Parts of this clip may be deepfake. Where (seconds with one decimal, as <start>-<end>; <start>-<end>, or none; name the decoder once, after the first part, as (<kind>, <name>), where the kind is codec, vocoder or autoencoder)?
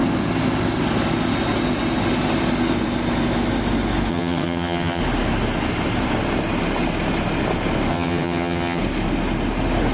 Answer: 4.1-5.0 (vocoder, HiFi-GAN); 7.9-8.8